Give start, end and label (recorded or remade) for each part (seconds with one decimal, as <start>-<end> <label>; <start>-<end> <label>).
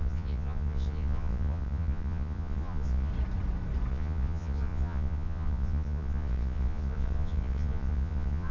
0.0-3.1 remade; 3.1-3.9 recorded; 3.9-8.5 remade